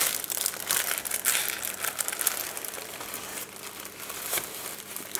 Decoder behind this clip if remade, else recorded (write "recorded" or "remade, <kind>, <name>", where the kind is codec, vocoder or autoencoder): recorded